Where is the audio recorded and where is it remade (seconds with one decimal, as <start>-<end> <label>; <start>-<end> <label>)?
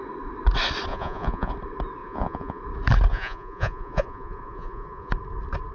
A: 0.0-0.9 recorded; 0.9-1.5 remade; 1.5-2.0 recorded; 2.0-2.6 remade; 2.6-3.1 recorded; 3.1-5.1 remade; 5.1-5.7 recorded